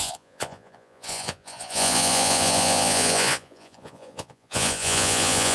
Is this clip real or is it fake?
fake